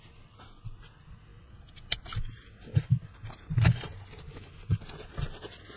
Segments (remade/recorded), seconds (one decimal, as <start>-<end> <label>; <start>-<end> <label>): 0.0-1.3 recorded; 1.3-4.8 remade; 4.8-5.8 recorded